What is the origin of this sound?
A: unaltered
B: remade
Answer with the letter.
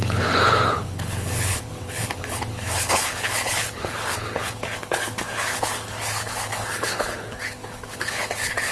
B